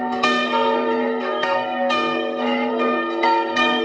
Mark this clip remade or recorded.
remade